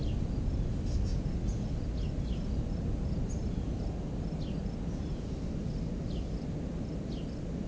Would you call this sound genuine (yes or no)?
yes